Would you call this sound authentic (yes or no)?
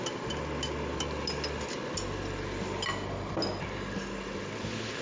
yes